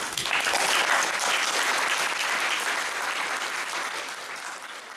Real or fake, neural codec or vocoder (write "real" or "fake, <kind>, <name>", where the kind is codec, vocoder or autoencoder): real